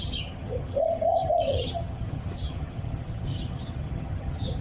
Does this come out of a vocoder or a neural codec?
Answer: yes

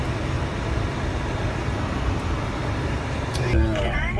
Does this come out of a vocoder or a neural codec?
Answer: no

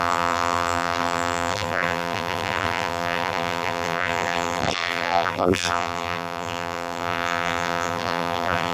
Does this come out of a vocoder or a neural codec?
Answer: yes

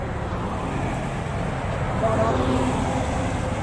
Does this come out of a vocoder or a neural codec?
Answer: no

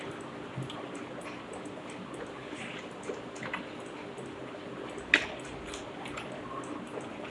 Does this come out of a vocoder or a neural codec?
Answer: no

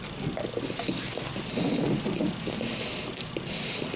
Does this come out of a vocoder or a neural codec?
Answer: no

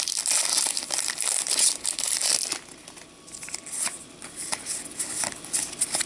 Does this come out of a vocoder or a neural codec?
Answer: no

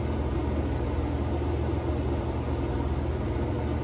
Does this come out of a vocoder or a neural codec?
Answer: no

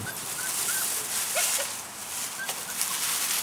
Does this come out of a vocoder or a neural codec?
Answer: no